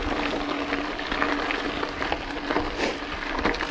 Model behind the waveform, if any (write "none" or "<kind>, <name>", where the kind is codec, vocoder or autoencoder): none